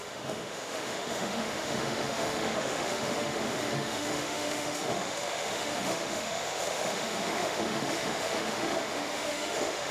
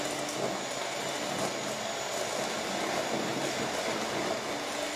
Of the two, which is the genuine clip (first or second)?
second